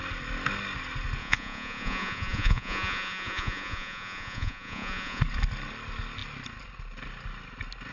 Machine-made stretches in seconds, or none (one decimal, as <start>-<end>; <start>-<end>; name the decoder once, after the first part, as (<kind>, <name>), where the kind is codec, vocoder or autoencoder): 1.2-5.2 (vocoder, Vocos)